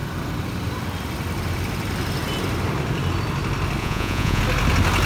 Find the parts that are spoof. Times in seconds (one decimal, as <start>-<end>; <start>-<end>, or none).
3.8-4.4